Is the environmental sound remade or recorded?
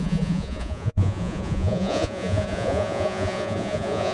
remade